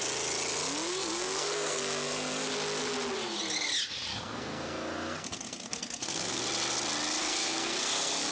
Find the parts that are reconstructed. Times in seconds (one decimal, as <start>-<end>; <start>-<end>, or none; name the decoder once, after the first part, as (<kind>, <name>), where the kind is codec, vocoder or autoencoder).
0.9-2.5 (codec, SNAC); 4.1-6.4; 7.2-8.3